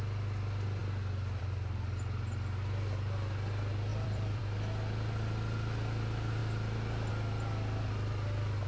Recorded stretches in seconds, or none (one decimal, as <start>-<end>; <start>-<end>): 0.0-3.9; 4.4-8.7